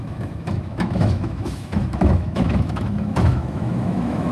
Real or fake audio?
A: fake